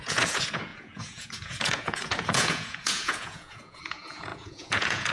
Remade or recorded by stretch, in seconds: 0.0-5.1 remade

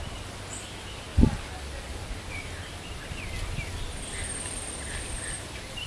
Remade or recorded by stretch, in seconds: 0.0-5.9 recorded

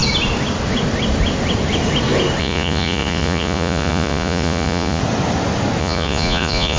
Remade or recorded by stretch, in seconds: 0.0-2.4 recorded; 2.4-5.0 remade; 5.0-5.8 recorded; 5.8-6.8 remade

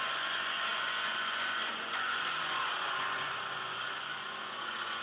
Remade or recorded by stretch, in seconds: 0.0-5.0 remade

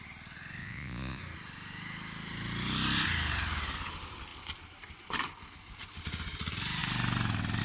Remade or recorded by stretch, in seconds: 0.0-0.6 recorded; 0.6-1.2 remade; 1.2-7.6 recorded

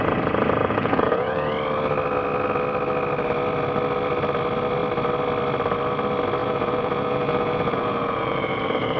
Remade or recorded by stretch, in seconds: 0.0-0.6 recorded; 0.6-1.5 remade; 1.5-6.4 recorded; 6.4-9.0 remade

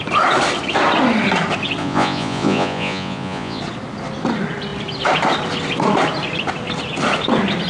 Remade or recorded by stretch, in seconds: 0.0-1.8 recorded; 1.8-3.6 remade; 3.6-7.7 recorded